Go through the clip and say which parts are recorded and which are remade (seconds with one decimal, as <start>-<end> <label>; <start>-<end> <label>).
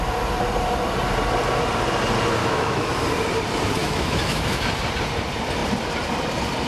0.0-2.4 recorded; 2.4-2.9 remade; 2.9-3.8 recorded; 3.8-4.7 remade; 4.7-6.7 recorded